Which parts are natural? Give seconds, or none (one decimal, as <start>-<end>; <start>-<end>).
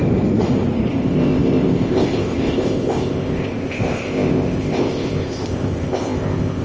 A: 0.0-0.9